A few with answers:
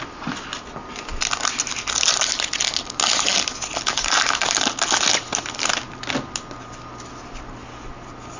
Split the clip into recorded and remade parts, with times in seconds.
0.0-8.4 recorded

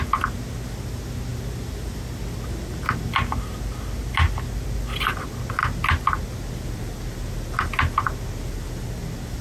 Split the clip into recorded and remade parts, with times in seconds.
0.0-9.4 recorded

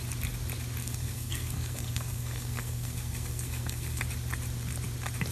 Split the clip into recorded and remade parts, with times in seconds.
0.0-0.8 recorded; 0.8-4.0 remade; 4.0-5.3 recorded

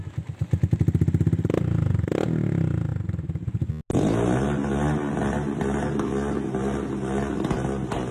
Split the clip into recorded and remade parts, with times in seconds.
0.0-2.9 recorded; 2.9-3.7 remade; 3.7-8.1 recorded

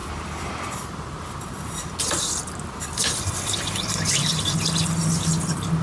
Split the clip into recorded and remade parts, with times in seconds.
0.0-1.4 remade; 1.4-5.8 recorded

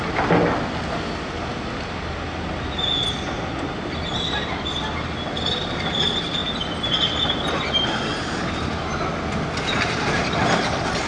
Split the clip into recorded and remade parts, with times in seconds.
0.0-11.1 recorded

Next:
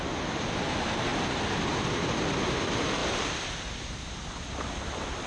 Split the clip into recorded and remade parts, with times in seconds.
0.0-3.0 recorded; 3.0-3.8 remade; 3.8-5.3 recorded